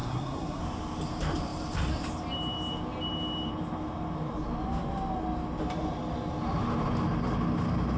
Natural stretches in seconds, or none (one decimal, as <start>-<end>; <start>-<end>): 0.6-8.0